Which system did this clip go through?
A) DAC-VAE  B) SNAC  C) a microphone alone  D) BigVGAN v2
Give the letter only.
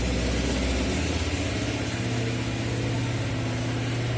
C